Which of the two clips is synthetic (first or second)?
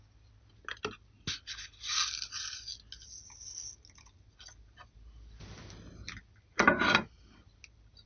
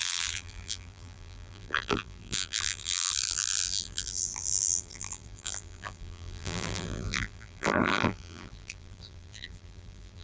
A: second